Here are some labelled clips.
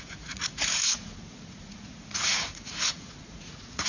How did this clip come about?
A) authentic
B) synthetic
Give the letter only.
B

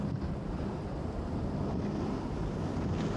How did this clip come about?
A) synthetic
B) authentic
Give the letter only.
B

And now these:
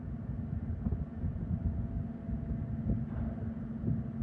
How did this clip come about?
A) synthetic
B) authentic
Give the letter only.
B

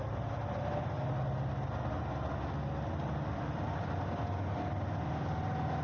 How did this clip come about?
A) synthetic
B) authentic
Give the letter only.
B